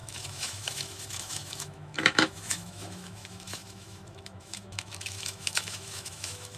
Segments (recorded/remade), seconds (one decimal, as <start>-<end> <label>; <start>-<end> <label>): 0.0-6.6 remade